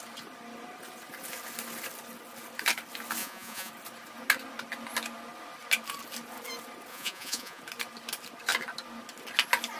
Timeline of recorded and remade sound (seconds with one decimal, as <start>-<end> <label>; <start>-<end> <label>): 0.0-3.2 recorded; 3.2-3.7 remade; 3.7-6.9 recorded; 6.9-7.6 remade; 7.6-9.8 recorded

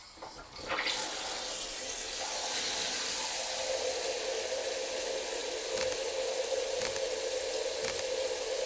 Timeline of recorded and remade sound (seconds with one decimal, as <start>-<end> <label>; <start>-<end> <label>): 0.0-8.7 recorded

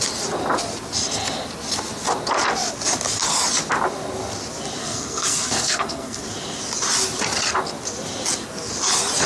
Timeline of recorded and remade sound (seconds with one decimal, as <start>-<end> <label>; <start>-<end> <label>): 0.0-4.8 recorded; 4.8-6.2 remade; 6.2-9.3 recorded